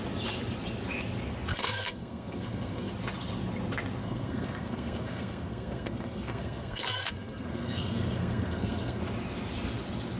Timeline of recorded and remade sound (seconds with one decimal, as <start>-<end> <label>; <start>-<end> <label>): 0.0-1.5 recorded; 1.5-2.9 remade; 2.9-4.0 recorded; 4.0-9.0 remade; 9.0-10.2 recorded